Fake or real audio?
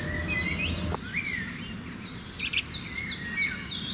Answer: real